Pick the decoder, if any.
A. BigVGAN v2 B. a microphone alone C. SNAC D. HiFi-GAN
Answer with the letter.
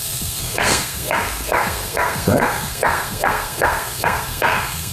C